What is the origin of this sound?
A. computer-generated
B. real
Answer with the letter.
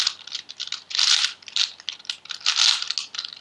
B